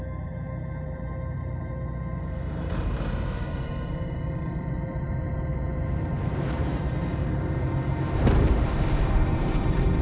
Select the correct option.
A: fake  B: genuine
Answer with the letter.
A